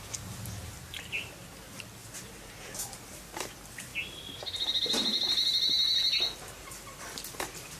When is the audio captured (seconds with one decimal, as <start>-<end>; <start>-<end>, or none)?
0.0-7.8